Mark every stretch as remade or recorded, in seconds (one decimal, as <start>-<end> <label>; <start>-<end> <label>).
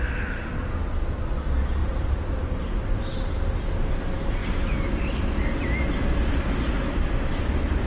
0.0-1.8 recorded; 1.8-3.6 remade; 3.6-7.9 recorded